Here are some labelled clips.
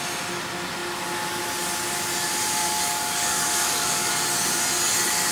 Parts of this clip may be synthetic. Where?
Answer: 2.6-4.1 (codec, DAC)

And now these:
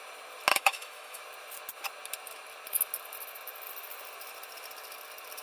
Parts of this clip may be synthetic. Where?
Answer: 0.5-1.2 (autoencoder, DAC-VAE)

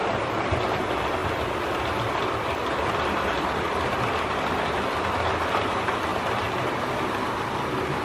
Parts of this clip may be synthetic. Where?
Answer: 0.0-1.2 (vocoder, BigVGAN v2); 1.9-6.1; 6.7-8.0

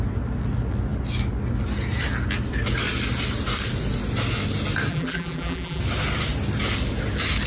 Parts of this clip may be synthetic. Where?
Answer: 4.9-5.8 (vocoder, BigVGAN v2)

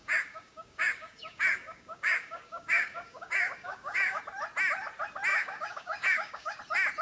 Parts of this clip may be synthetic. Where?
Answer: 0.0-4.2 (codec, DAC); 5.3-6.6

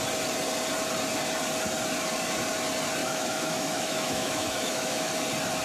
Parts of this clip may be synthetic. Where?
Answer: 3.0-5.1 (autoencoder, DAC-VAE)

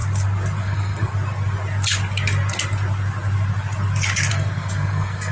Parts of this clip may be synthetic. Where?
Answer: 0.6-1.1 (codec, SNAC); 4.3-5.3